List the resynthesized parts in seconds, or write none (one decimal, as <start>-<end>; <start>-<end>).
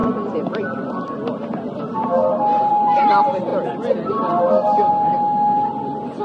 2.7-6.2